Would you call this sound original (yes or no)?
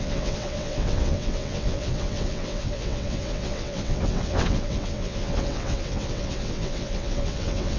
no